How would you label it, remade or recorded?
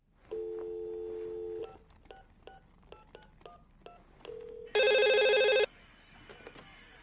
recorded